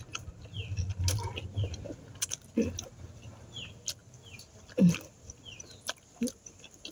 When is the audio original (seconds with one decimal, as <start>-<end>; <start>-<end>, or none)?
0.0-4.0; 5.4-6.9